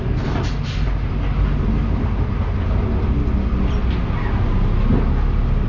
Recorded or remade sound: recorded